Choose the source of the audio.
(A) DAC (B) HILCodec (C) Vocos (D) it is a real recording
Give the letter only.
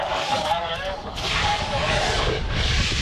A